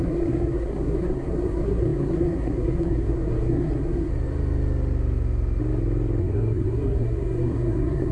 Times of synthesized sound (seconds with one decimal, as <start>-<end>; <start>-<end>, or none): 0.0-4.1; 6.2-8.1